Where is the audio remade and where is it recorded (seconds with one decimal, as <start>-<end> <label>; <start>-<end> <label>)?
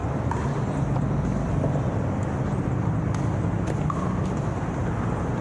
0.0-5.4 recorded